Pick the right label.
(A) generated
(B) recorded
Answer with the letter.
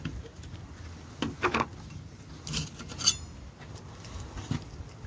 B